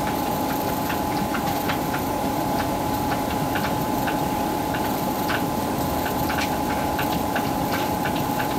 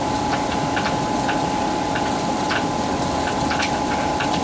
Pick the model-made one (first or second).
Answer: first